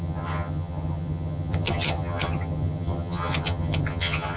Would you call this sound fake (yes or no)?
yes